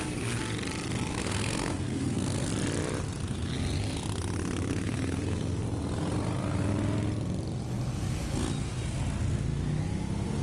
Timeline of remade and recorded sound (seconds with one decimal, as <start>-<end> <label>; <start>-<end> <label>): 0.0-1.2 recorded; 1.2-2.5 remade; 2.5-4.7 recorded; 4.7-5.6 remade; 5.6-10.4 recorded